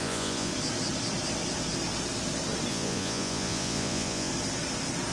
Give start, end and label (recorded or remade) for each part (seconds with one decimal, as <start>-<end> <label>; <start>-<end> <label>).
0.0-0.5 remade; 0.5-2.7 recorded; 2.7-4.3 remade; 4.3-5.1 recorded